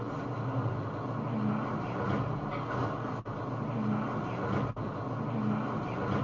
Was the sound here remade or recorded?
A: recorded